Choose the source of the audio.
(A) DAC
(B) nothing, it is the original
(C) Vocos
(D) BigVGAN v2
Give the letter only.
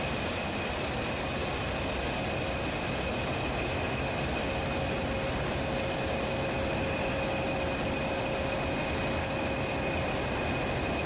B